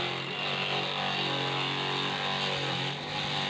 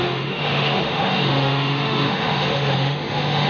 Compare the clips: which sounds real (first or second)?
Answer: first